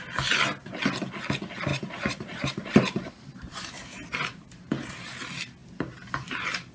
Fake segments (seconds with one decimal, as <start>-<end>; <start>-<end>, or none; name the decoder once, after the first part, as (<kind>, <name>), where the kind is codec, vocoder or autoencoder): 1.7-4.7 (vocoder, BigVGAN v2)